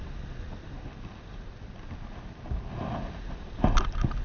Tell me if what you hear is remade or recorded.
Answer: recorded